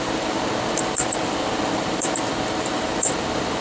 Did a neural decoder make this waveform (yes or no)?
yes